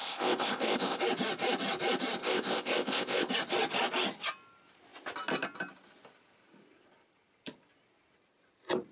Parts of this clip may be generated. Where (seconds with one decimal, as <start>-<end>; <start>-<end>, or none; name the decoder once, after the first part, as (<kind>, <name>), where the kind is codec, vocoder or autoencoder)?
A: 0.0-1.0 (codec, ZipCodec); 2.2-3.3